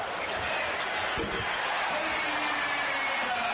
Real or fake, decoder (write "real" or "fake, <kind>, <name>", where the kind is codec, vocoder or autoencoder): real